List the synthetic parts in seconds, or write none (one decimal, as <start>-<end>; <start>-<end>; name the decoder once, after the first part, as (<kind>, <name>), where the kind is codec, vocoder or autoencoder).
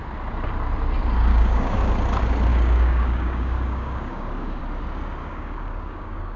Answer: 1.3-1.9 (codec, DAC); 2.5-4.6; 5.2-6.4